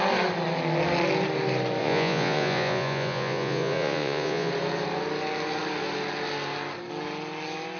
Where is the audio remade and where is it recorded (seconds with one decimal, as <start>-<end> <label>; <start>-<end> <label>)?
0.0-1.8 recorded; 1.8-4.5 remade; 4.5-7.8 recorded